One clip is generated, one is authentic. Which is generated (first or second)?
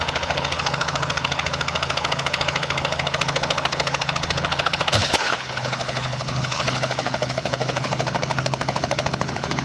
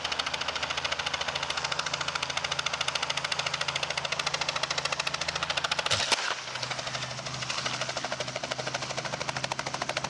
first